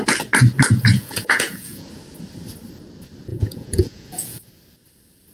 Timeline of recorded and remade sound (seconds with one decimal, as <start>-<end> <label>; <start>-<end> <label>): 0.0-0.9 recorded; 0.9-1.9 remade; 1.9-3.3 recorded; 3.3-4.5 remade; 4.5-5.3 recorded